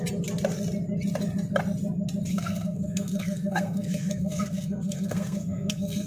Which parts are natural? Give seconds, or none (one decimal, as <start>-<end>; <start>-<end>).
0.0-2.3